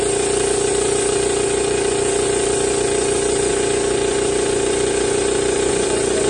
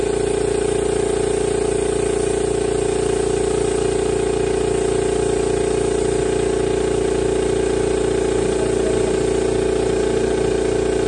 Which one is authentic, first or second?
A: second